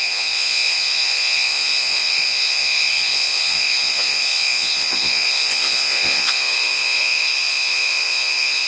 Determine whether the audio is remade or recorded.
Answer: remade